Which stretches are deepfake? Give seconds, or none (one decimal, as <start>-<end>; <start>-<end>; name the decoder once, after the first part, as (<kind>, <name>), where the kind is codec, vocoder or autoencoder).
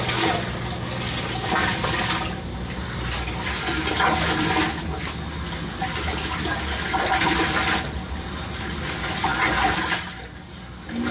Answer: none